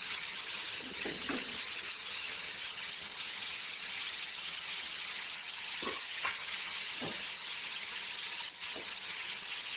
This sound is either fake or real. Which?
fake